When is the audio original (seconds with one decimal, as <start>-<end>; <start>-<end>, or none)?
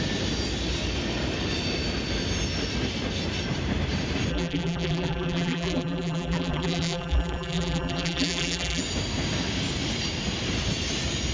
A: 0.0-4.3; 8.8-11.3